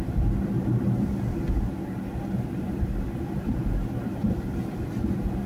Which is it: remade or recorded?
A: recorded